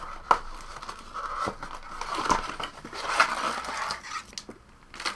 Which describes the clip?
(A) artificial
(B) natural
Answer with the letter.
B